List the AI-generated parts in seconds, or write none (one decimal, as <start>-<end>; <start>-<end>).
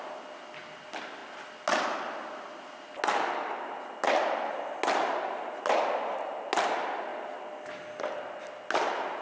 none